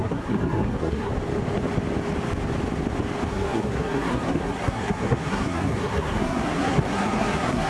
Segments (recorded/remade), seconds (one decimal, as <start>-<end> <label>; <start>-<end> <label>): 0.0-1.1 remade; 1.1-3.3 recorded; 3.3-7.7 remade